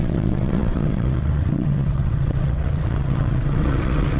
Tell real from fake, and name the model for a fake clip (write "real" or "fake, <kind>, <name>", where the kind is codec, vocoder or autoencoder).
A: fake, vocoder, WaveNeXt